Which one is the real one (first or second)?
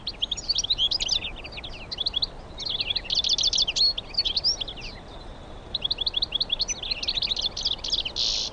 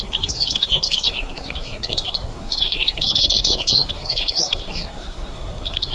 first